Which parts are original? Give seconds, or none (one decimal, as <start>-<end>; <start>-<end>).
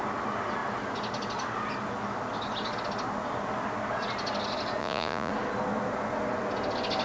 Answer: 0.0-4.8; 5.3-7.0